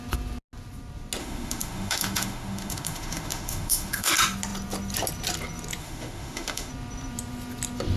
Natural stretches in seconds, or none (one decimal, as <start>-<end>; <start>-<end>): 0.0-1.2; 4.1-5.8; 6.7-8.0